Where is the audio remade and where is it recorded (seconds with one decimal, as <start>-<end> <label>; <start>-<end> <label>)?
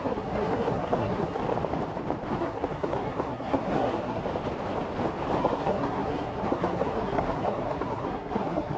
0.0-1.4 remade; 1.4-2.4 recorded; 2.4-4.2 remade; 4.2-5.4 recorded; 5.4-8.8 remade